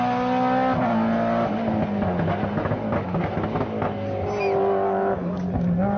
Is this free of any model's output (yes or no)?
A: yes